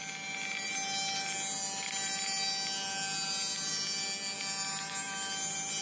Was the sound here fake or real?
real